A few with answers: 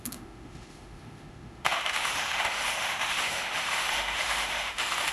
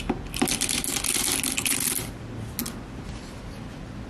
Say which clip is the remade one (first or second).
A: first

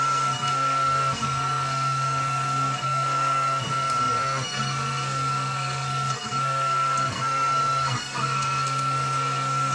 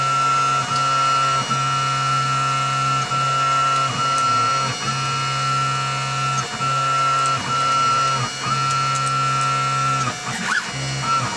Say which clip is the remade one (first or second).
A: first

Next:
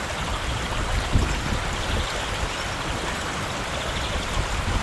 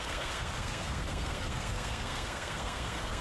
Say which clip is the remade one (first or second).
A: second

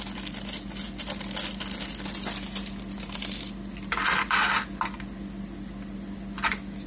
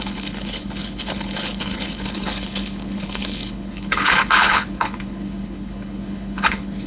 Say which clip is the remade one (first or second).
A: second